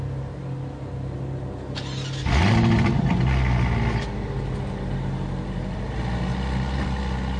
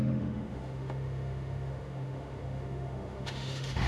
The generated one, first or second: second